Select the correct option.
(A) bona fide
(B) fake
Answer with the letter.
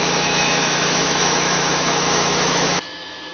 B